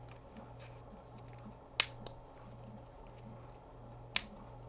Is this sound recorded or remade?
recorded